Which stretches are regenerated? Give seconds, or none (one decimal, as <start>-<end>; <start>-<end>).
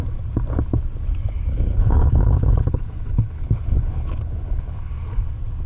1.5-4.9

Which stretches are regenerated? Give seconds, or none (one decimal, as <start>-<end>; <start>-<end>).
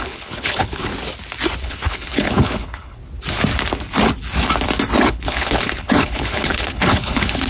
0.0-0.9; 1.6-3.0; 5.1-7.5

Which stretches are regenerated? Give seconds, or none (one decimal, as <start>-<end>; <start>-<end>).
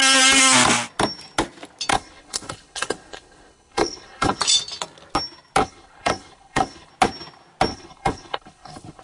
1.9-4.4; 5.6-6.9; 7.7-9.0